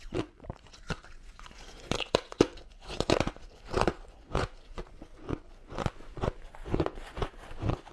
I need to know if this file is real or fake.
fake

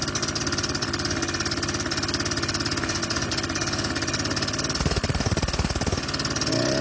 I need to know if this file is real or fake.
real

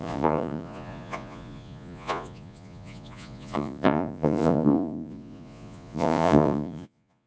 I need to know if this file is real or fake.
fake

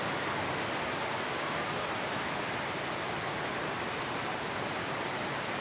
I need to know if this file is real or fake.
real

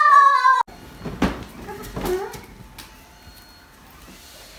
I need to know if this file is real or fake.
real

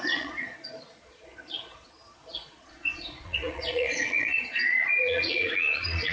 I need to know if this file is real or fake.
fake